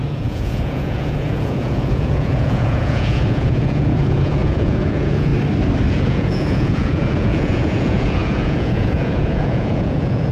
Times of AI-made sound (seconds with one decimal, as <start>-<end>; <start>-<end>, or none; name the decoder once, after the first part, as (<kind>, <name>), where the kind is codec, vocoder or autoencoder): 0.0-5.3 (vocoder, Vocos); 5.9-10.3